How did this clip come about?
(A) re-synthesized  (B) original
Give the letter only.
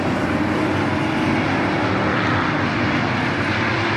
B